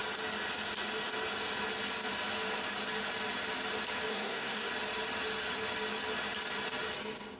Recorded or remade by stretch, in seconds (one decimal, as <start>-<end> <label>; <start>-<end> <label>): 0.0-4.1 recorded; 4.1-4.7 remade; 4.7-7.4 recorded